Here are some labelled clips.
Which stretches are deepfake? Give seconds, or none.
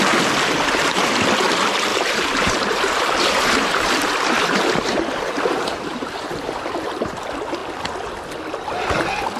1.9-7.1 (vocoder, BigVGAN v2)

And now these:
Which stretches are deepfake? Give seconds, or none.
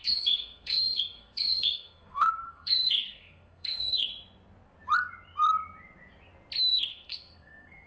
0.0-4.1 (codec, SNAC); 6.7-7.9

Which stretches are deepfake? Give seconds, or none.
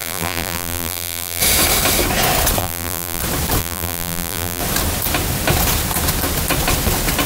0.0-1.4 (vocoder, BigVGAN v2); 2.6-3.2; 3.6-4.6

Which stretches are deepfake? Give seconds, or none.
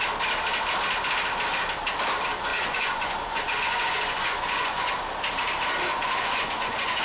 2.5-4.9 (vocoder, Vocos); 5.9-7.0